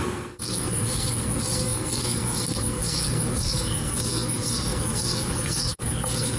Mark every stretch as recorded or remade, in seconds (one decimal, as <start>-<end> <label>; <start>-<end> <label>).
0.0-6.4 remade